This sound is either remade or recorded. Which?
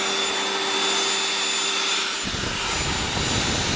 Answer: recorded